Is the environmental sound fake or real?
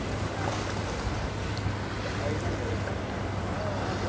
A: real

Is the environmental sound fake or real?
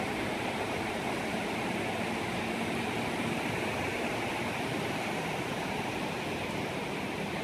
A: real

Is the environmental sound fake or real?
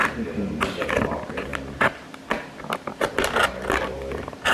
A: real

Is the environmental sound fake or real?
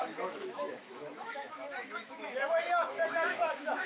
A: fake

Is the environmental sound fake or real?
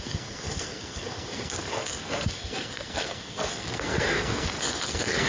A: fake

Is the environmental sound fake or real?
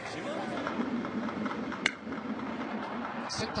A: fake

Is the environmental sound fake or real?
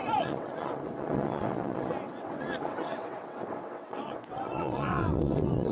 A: fake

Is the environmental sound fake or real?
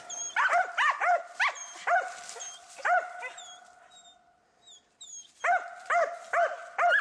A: real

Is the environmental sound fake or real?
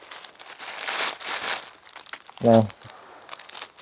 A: real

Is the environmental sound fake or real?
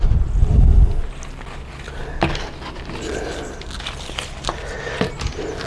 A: real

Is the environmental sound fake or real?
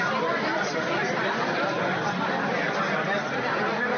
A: real